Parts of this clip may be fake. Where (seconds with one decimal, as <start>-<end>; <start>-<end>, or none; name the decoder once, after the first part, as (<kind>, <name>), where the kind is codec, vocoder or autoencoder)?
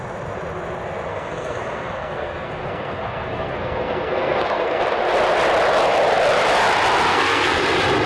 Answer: 1.1-4.8 (codec, SNAC); 7.1-7.6